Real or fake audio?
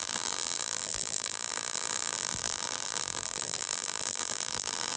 fake